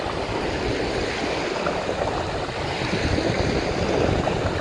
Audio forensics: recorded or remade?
recorded